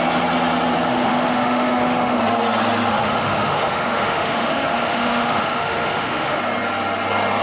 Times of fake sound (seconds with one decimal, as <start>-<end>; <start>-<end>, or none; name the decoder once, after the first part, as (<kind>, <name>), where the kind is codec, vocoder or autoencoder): 0.9-2.2 (autoencoder, DAC-VAE); 2.9-6.4